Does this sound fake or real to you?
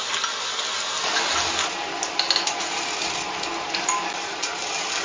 real